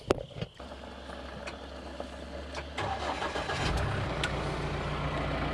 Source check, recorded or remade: recorded